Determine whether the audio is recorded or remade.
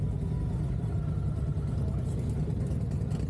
recorded